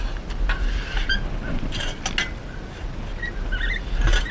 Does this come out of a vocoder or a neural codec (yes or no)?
no